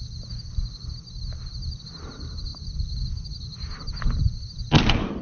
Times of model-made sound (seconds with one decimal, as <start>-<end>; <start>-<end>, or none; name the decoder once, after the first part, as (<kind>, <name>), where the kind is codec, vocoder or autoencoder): none